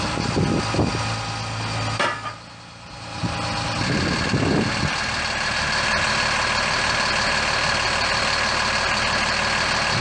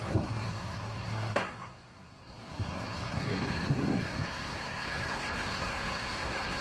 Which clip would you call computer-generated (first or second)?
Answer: second